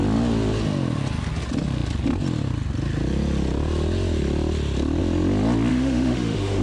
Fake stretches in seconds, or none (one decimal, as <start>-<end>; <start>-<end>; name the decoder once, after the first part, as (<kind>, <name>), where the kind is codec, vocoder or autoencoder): 5.7-6.6 (autoencoder, DAC-VAE)